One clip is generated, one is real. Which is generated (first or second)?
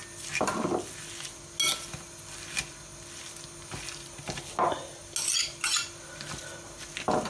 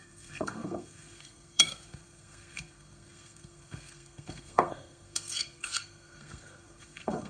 second